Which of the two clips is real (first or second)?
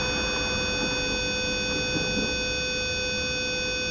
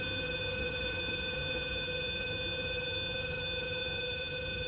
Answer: first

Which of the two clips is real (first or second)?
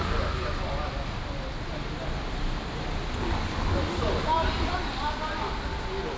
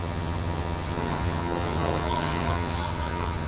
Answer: first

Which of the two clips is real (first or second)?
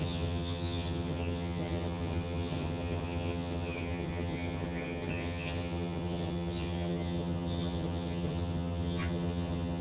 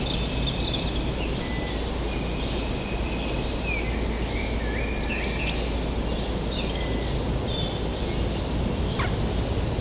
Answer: second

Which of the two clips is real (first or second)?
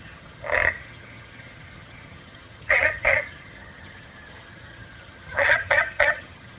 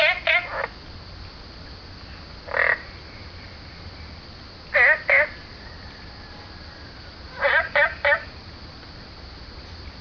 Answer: second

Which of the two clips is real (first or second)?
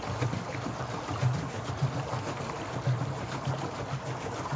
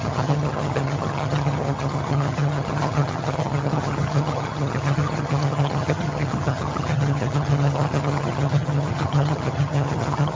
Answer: first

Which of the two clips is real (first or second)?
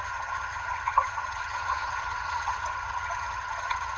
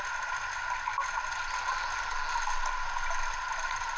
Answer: second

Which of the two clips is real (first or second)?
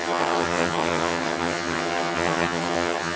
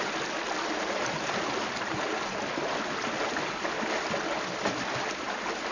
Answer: second